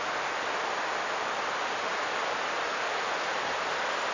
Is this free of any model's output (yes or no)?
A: yes